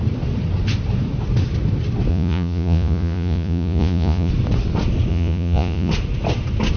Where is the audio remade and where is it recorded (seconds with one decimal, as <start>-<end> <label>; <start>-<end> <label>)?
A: 0.0-2.1 recorded; 2.1-4.3 remade; 4.3-5.1 recorded; 5.1-5.9 remade; 5.9-6.8 recorded